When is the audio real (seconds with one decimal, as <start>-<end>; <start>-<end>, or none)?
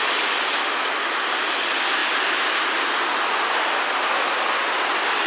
0.0-5.3